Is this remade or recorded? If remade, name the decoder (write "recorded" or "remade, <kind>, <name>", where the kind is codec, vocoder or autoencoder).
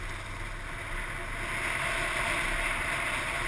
recorded